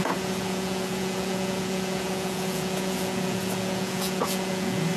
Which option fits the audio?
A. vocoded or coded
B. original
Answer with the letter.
A